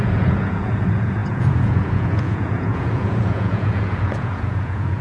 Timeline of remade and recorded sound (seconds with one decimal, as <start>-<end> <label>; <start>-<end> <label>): 0.0-5.0 remade